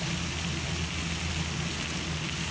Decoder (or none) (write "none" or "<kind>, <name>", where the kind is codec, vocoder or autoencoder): none